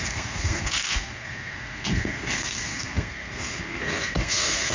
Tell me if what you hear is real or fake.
fake